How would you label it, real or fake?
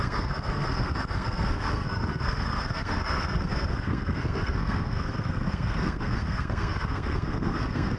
fake